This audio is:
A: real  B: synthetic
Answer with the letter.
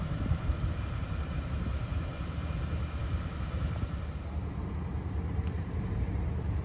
B